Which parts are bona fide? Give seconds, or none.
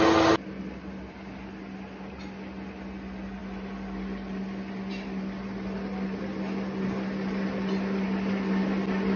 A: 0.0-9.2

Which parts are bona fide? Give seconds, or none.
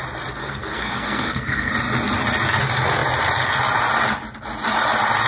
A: 0.0-0.4; 1.7-5.3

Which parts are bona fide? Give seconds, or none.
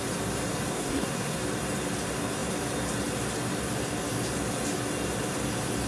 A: 0.0-0.7; 1.4-5.9